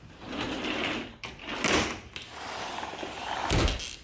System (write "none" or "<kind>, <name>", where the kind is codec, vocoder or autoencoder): none